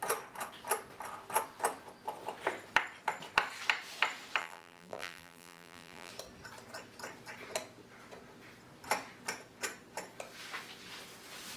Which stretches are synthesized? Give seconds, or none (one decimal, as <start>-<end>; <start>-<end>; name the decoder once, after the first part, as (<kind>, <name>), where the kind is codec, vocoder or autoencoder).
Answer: 4.4-6.1 (vocoder, BigVGAN v2)